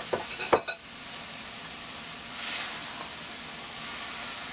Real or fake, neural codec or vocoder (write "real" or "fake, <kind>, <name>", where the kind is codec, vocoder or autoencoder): real